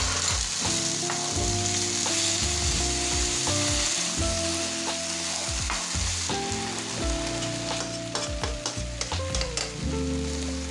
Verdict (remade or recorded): recorded